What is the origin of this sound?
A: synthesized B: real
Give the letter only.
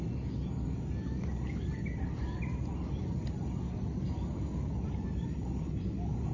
B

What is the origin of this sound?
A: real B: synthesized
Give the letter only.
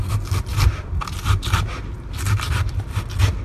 A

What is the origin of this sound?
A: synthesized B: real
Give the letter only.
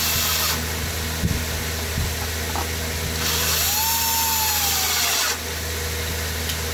B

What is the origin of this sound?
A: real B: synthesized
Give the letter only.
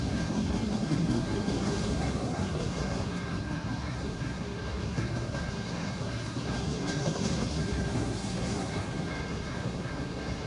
B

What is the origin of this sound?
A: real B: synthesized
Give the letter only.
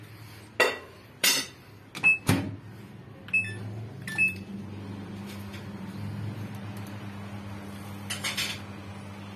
A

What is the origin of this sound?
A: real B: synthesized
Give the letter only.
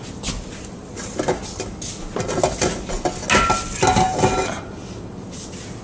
A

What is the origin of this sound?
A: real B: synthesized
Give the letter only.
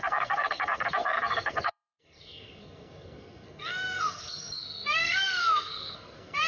B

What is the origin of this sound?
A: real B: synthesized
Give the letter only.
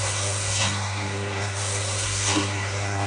B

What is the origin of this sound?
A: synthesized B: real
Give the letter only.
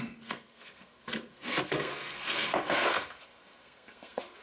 A